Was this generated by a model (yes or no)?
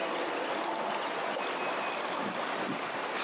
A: no